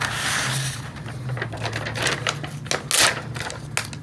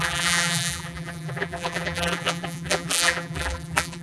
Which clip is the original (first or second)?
first